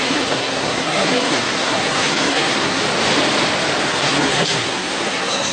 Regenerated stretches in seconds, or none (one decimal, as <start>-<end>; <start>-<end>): 0.0-2.8; 3.9-5.5